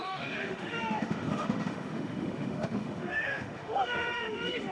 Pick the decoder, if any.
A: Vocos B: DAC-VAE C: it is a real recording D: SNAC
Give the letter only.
B